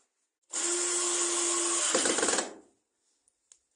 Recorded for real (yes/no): yes